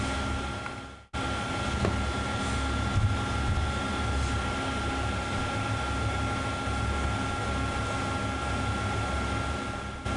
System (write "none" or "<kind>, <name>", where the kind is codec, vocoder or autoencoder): none